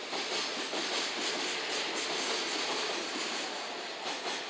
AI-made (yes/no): no